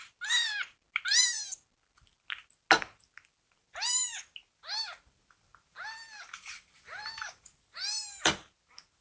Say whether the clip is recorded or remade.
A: recorded